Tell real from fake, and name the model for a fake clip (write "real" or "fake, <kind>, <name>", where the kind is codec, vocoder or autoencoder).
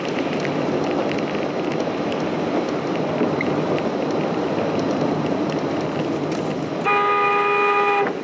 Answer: real